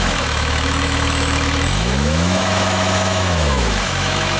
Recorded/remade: remade